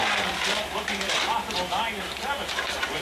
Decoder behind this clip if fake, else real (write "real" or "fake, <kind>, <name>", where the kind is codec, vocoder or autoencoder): real